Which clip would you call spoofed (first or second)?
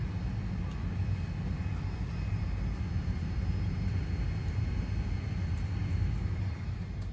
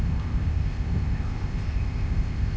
second